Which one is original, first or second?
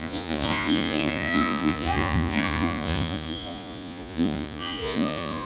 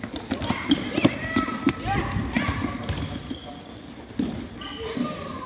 second